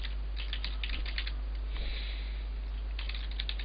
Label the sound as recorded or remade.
recorded